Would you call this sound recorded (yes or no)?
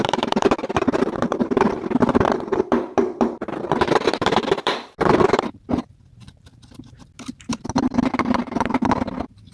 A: no